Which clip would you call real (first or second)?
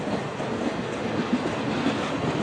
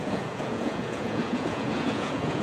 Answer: first